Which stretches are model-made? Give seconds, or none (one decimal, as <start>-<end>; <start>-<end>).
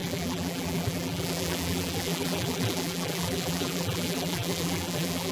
0.0-5.3